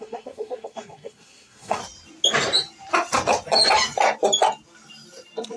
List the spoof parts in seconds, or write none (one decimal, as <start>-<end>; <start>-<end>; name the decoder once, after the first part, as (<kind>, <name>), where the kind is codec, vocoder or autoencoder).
0.0-1.8 (codec, SNAC)